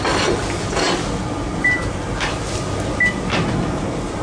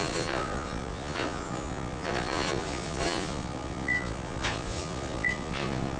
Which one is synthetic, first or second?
second